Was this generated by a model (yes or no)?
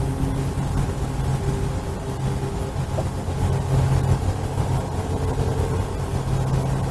no